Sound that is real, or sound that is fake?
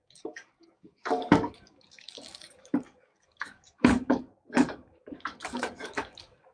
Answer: fake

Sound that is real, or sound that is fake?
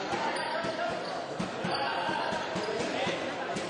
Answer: fake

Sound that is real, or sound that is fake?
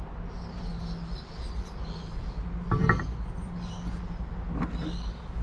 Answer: real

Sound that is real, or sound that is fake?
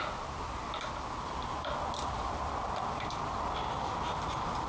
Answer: real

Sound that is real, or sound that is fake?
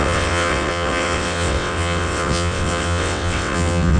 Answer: fake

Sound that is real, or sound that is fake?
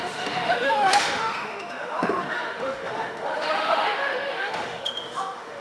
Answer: fake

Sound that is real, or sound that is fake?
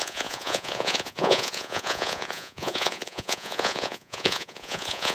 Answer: fake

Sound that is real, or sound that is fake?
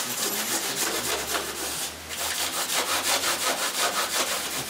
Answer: real